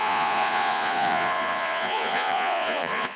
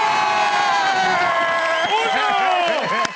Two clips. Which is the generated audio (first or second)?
first